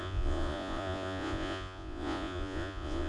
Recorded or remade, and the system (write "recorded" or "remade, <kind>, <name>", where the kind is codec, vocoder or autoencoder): remade, vocoder, Vocos